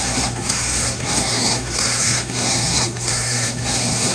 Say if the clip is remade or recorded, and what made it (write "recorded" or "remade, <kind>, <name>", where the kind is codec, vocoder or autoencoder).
remade, codec, SNAC